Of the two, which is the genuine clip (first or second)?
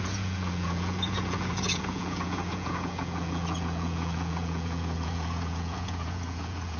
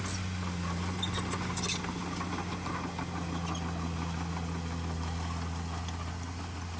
second